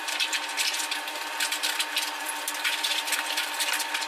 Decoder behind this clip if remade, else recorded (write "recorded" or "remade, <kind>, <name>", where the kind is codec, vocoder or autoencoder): remade, vocoder, BigVGAN v2